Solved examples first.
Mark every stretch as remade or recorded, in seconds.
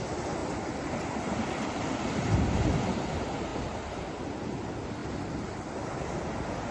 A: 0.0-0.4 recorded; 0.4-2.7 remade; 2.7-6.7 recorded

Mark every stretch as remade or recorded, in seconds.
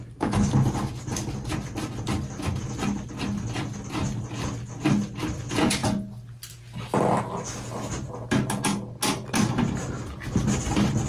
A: 0.0-11.1 recorded